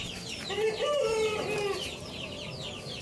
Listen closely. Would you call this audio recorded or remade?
recorded